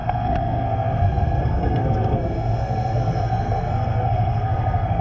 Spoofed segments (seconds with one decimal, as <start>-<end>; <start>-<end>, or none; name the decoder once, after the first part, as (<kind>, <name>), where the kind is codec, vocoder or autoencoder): 0.0-5.0 (codec, SNAC)